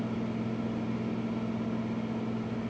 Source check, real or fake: real